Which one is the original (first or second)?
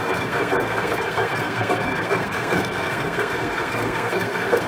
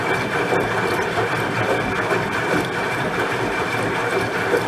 second